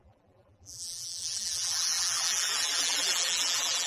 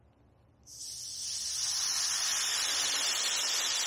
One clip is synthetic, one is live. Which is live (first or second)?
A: second